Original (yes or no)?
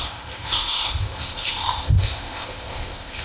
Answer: no